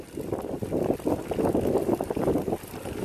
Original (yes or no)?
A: yes